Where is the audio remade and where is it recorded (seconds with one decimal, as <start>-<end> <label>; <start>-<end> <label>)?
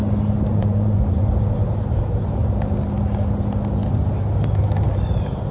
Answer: 0.0-0.5 recorded; 0.5-1.3 remade; 1.3-5.5 recorded